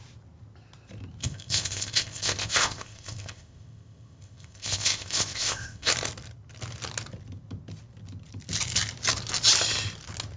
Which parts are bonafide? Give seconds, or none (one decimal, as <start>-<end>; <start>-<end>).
0.0-1.2; 5.9-10.4